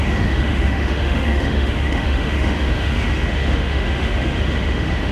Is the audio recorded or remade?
remade